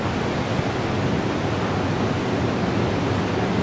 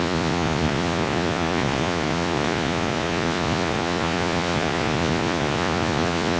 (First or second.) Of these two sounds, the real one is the first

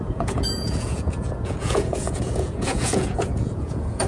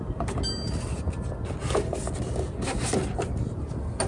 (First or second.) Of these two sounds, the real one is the second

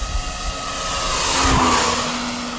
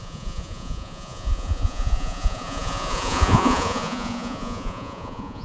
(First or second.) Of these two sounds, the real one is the first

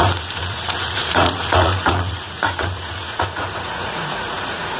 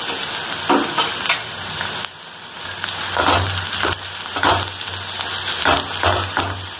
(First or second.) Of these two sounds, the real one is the second